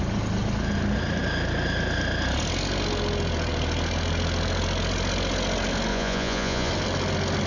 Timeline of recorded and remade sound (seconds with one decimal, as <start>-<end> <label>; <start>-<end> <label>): 0.0-5.9 recorded; 5.9-6.7 remade; 6.7-7.5 recorded